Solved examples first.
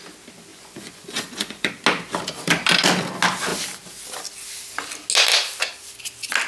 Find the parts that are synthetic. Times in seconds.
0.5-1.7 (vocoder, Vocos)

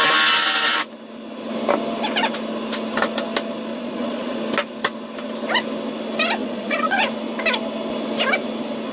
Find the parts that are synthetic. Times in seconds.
3.7-4.4 (vocoder, Vocos); 6.4-7.0